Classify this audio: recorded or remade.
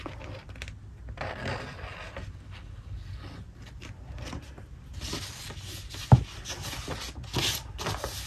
recorded